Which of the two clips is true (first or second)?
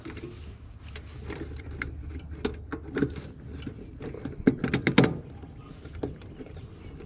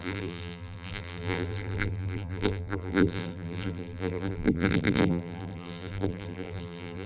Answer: first